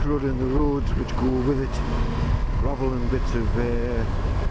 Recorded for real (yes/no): yes